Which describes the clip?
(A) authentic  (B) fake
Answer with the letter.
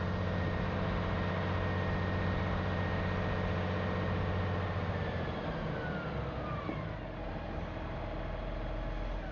A